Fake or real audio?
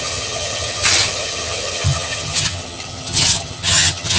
fake